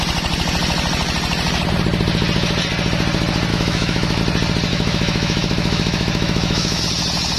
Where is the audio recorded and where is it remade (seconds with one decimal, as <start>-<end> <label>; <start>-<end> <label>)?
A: 0.0-3.5 recorded; 3.5-4.2 remade; 4.2-4.7 recorded; 4.7-6.8 remade; 6.8-7.4 recorded